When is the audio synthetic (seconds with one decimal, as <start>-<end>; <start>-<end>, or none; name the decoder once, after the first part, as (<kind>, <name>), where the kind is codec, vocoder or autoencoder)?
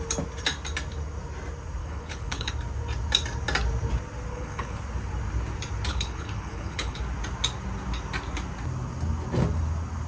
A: 1.8-2.5 (codec, HILCodec); 4.3-4.8; 5.9-7.0